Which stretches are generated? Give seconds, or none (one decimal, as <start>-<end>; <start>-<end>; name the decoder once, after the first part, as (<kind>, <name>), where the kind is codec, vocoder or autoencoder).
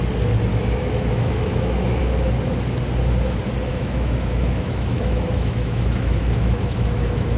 0.5-2.0 (autoencoder, DAC-VAE); 3.7-7.4